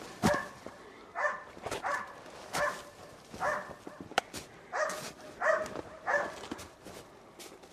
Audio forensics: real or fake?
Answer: real